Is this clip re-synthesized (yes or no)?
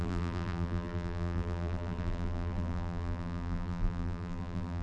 yes